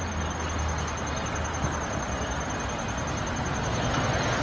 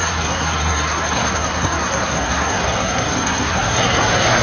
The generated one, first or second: second